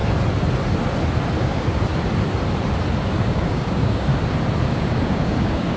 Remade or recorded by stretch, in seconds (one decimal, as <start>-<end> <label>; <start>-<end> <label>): 0.0-1.4 recorded; 1.4-1.9 remade; 1.9-3.1 recorded; 3.1-4.1 remade; 4.1-4.7 recorded; 4.7-5.8 remade